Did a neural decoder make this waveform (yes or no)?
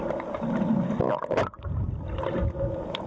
no